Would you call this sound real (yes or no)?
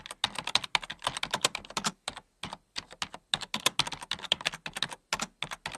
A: yes